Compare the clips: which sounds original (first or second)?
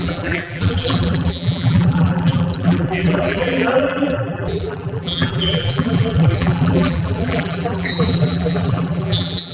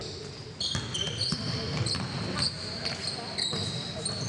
second